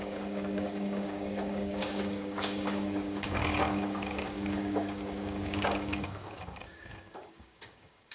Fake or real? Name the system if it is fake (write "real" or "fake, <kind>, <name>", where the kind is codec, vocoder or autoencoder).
fake, codec, DAC